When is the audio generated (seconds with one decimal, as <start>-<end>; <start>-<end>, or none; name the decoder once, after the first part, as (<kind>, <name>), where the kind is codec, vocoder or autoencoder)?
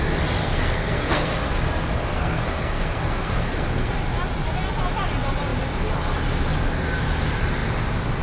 0.4-1.6 (codec, SNAC); 2.1-3.9